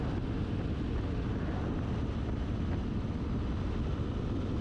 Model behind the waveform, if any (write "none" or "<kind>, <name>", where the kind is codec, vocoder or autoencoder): none